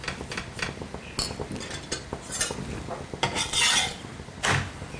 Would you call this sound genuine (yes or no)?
yes